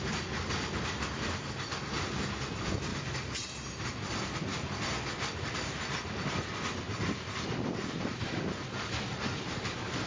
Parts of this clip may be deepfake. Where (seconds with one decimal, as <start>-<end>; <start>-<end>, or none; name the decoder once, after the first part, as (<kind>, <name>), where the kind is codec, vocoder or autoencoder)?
2.9-4.1 (vocoder, BigVGAN v2)

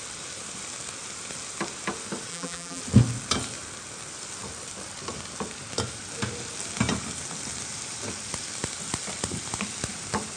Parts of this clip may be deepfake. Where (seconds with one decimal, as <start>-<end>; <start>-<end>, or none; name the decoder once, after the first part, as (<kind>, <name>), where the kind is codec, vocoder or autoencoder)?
2.3-2.8 (vocoder, BigVGAN v2)

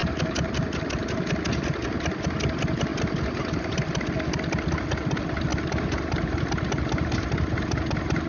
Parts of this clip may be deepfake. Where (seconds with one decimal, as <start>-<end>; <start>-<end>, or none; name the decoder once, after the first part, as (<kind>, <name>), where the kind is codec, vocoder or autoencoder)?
0.0-0.9 (vocoder, BigVGAN v2); 2.9-3.8; 5.5-8.3